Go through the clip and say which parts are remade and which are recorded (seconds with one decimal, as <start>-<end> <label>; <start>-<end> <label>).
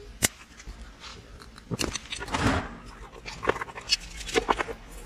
0.0-1.1 recorded; 1.1-2.6 remade; 2.6-5.1 recorded